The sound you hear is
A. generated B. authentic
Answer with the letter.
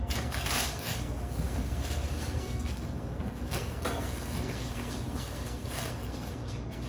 A